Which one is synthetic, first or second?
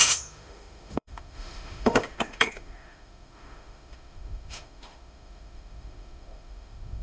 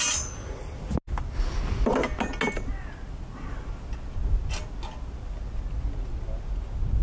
first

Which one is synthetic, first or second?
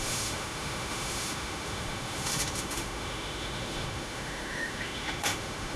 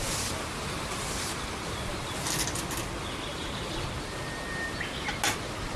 first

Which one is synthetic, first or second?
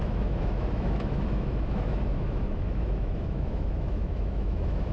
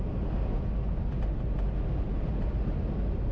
first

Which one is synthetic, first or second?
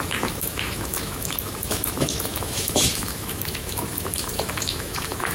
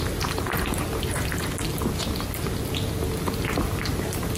first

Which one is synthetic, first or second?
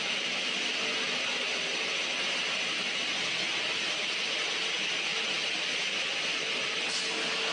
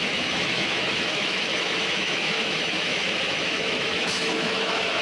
second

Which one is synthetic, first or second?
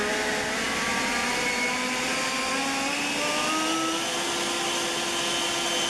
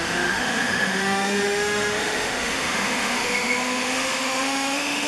second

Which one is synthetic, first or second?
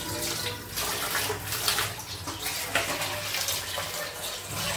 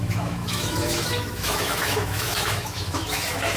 second